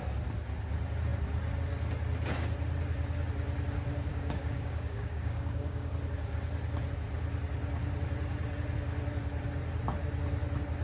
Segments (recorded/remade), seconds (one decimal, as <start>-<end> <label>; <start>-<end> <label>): 0.0-4.1 recorded; 4.1-5.9 remade; 5.9-10.8 recorded